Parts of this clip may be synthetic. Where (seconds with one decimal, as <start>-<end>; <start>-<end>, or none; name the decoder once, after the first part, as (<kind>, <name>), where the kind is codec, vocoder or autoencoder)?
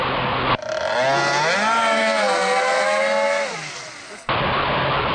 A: 2.0-3.0 (codec, SNAC)